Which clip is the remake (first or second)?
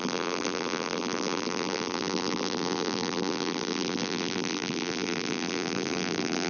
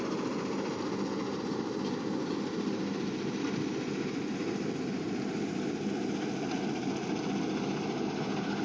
first